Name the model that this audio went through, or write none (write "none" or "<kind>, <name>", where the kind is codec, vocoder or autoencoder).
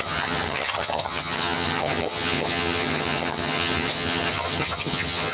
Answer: vocoder, HiFi-GAN